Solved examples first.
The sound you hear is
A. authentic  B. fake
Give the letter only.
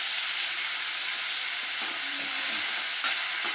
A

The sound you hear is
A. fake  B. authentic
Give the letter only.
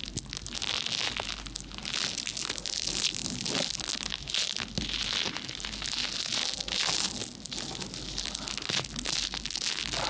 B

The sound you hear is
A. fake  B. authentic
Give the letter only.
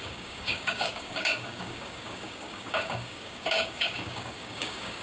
A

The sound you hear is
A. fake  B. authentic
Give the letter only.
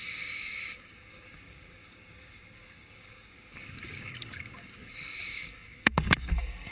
A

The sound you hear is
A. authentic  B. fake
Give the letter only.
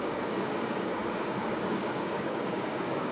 B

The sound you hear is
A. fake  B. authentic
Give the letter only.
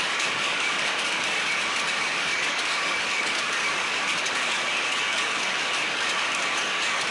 A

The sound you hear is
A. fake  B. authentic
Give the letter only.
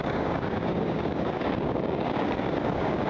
A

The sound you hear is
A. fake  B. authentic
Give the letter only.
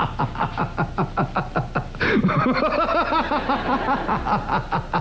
B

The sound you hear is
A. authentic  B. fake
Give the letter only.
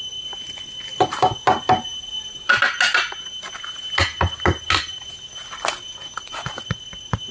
A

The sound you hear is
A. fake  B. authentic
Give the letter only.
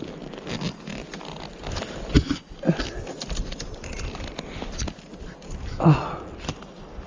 B